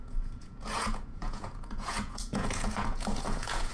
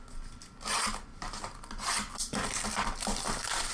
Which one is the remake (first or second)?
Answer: first